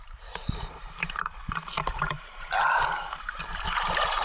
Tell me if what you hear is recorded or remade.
remade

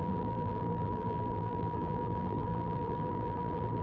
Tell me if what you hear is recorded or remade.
remade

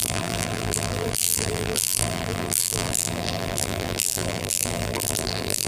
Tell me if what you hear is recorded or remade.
remade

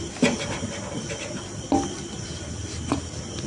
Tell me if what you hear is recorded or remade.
recorded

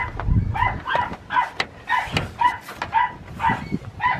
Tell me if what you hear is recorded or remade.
recorded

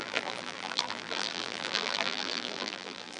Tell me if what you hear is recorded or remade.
remade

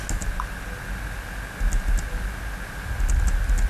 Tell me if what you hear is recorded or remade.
recorded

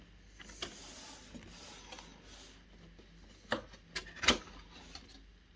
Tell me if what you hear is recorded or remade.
recorded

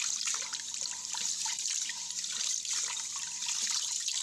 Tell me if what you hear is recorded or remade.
recorded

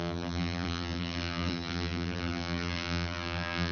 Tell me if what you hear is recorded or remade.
remade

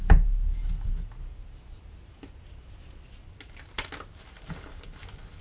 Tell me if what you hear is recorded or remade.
recorded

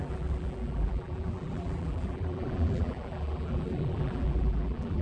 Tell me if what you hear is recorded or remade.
remade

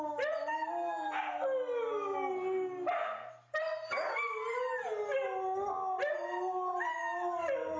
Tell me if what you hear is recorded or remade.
recorded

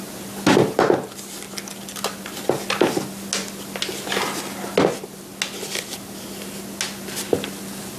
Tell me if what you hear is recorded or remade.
recorded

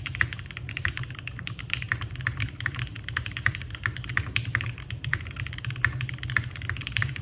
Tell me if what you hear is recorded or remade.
remade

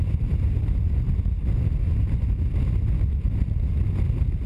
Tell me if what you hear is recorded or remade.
recorded